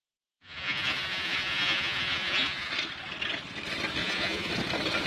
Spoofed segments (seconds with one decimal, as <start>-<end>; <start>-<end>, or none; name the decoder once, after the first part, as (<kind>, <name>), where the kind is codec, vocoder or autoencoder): 0.0-2.7 (vocoder, Vocos); 4.0-4.5